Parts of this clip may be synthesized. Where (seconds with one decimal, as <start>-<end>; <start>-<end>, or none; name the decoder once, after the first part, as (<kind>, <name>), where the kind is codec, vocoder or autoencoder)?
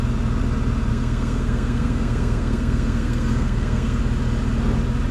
0.9-4.0 (codec, SNAC)